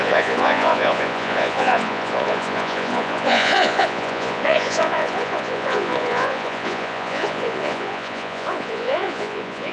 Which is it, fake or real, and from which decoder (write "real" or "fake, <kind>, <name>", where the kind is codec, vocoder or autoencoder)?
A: fake, vocoder, Vocos